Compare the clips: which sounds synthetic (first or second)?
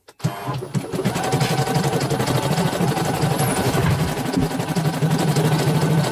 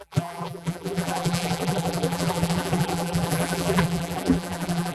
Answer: second